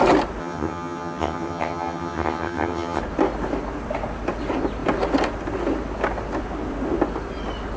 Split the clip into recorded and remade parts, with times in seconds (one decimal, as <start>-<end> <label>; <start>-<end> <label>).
0.0-0.4 recorded; 0.4-3.0 remade; 3.0-7.8 recorded